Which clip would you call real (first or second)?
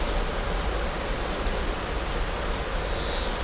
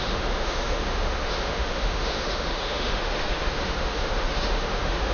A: first